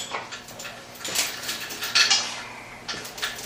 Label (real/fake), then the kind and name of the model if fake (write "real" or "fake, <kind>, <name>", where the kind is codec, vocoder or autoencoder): fake, vocoder, BigVGAN v2